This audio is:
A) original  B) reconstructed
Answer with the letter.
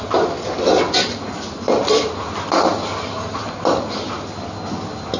A